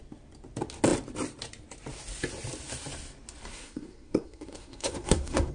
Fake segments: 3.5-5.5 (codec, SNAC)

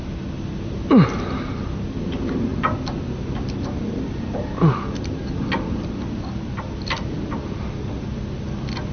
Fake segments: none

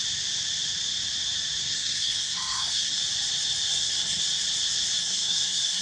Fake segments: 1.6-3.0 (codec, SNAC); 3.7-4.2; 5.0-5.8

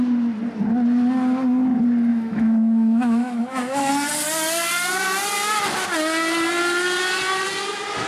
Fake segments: 2.1-3.9 (autoencoder, DAC-VAE)

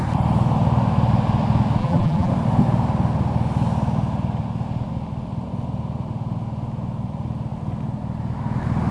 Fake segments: 1.8-2.3 (vocoder, BigVGAN v2)